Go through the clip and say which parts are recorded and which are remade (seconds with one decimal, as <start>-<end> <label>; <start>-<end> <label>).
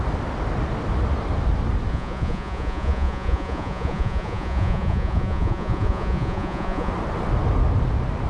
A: 0.0-1.9 recorded; 1.9-6.9 remade; 6.9-8.3 recorded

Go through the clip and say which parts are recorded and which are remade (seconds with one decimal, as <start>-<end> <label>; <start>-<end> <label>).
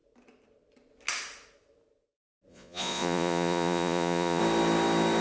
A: 0.0-2.5 recorded; 2.5-4.4 remade; 4.4-5.2 recorded